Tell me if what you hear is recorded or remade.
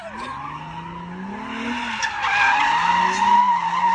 recorded